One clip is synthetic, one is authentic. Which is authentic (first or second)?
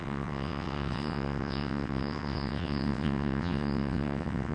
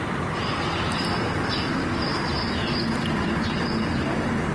second